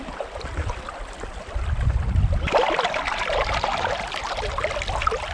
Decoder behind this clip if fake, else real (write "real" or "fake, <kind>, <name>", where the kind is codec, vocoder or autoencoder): real